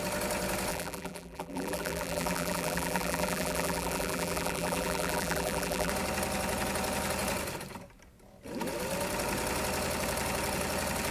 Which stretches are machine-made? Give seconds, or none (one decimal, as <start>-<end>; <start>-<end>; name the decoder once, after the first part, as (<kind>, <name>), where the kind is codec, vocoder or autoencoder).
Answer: 0.7-5.9 (vocoder, BigVGAN v2)

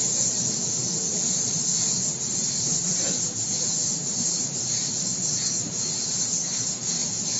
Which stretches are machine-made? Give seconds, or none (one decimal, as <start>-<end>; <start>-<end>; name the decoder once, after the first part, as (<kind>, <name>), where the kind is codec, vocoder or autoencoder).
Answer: 0.0-7.4 (vocoder, Vocos)

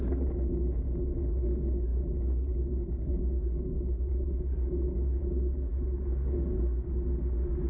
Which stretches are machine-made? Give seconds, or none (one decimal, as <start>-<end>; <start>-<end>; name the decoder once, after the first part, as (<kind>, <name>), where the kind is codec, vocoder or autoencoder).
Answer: none

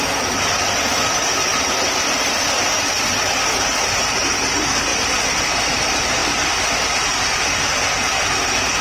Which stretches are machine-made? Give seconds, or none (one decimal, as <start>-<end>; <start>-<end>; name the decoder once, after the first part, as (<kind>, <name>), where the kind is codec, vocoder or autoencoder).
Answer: none

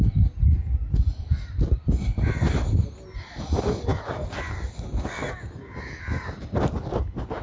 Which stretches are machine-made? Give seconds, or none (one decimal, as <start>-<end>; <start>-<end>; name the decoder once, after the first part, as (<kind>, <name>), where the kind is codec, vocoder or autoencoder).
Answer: none

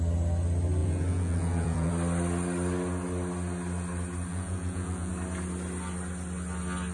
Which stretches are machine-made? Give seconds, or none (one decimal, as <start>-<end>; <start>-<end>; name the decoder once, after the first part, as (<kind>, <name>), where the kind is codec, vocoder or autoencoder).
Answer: 0.8-1.9 (vocoder, Vocos); 4.3-5.1